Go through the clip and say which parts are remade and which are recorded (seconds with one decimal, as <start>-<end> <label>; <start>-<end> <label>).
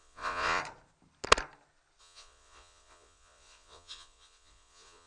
0.0-0.6 remade; 0.6-2.0 recorded; 2.0-5.1 remade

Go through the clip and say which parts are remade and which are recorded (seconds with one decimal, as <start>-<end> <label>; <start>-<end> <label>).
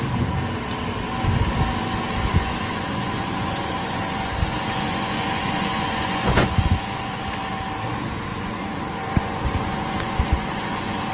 0.0-2.3 recorded; 2.3-7.4 remade; 7.4-8.3 recorded; 8.3-11.1 remade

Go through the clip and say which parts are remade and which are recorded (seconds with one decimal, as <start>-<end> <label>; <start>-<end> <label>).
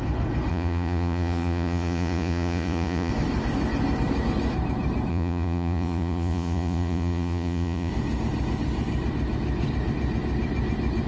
0.0-0.5 recorded; 0.5-3.1 remade; 3.1-5.1 recorded; 5.1-7.9 remade; 7.9-11.1 recorded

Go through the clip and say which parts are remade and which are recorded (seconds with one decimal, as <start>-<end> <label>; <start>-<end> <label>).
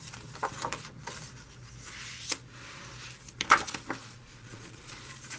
0.0-4.0 recorded; 4.0-5.4 remade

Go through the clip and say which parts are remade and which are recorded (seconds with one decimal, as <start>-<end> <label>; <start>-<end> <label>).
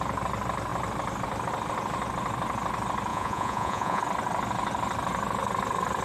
0.0-3.1 recorded; 3.1-4.0 remade; 4.0-6.0 recorded